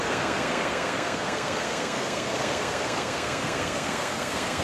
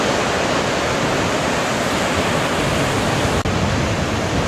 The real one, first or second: second